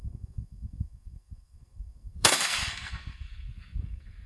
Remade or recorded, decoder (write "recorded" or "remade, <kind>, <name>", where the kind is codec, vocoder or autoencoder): remade, codec, SNAC